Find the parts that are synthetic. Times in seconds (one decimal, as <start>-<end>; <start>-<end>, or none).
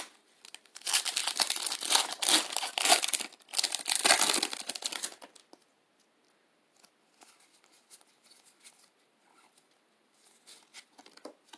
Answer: none